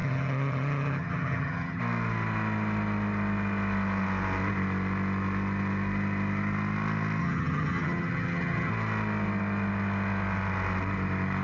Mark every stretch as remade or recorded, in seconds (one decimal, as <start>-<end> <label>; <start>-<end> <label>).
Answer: 0.0-1.8 remade; 1.8-7.2 recorded; 7.2-8.7 remade; 8.7-11.4 recorded